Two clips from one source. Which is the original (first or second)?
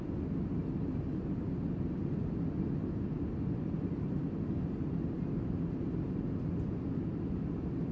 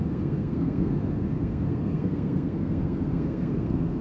first